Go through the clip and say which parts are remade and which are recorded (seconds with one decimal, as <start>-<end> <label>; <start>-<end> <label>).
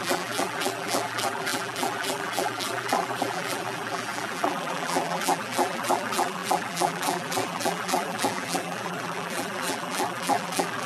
0.0-10.9 remade